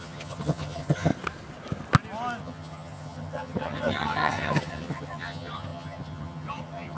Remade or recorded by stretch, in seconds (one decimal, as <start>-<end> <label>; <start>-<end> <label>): 0.0-1.1 remade; 1.1-2.4 recorded; 2.4-7.0 remade

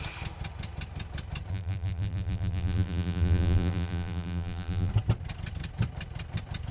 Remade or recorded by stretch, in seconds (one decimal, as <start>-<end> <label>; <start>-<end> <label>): 0.0-1.5 recorded; 1.5-4.9 remade; 4.9-6.7 recorded

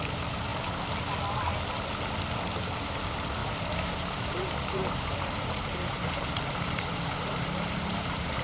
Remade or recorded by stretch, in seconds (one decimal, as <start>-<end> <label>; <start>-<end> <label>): 0.0-3.4 recorded; 3.4-8.4 remade

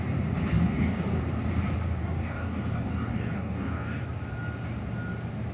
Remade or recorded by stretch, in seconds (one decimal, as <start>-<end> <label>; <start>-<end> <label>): 0.0-0.5 recorded; 0.5-1.2 remade; 1.2-2.0 recorded; 2.0-4.0 remade; 4.0-5.5 recorded

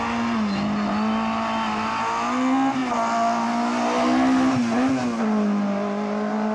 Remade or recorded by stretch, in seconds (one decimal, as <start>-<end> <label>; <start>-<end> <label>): 0.0-6.5 recorded